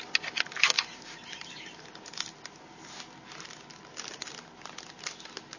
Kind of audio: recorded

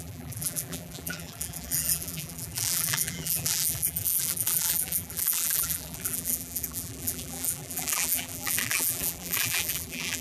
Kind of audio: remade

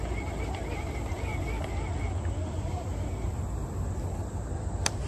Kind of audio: recorded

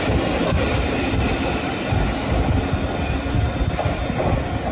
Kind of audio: recorded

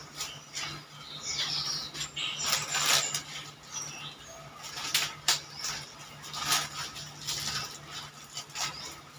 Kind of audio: recorded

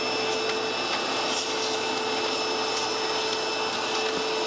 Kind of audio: recorded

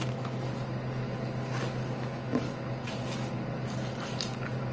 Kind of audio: recorded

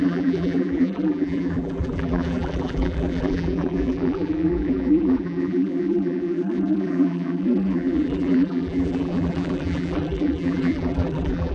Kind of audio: remade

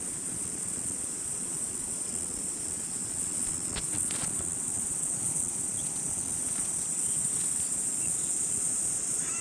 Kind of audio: remade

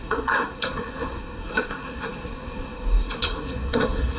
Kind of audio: remade